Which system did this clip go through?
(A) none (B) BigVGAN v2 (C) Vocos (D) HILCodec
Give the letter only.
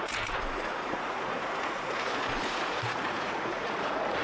C